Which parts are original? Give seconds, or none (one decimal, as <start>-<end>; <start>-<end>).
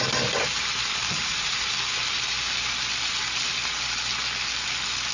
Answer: 0.0-1.0; 1.6-5.1